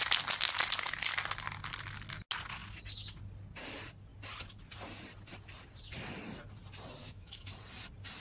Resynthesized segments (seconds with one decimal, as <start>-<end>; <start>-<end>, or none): 7.0-7.5